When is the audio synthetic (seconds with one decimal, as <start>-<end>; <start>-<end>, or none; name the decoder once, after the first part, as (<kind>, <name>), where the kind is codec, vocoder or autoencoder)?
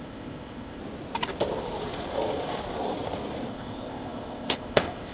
0.0-0.8 (codec, ZipCodec); 3.5-5.1